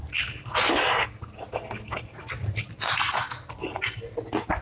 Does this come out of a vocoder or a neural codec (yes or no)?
no